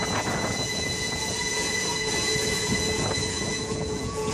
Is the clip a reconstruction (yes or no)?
yes